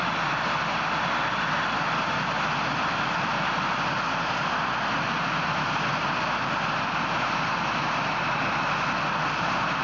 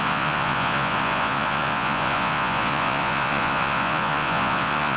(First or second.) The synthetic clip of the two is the second